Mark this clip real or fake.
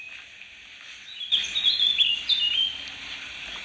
real